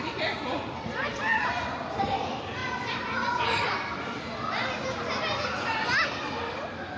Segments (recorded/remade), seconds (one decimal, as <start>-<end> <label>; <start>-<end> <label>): 0.0-4.8 remade; 4.8-6.4 recorded; 6.4-7.0 remade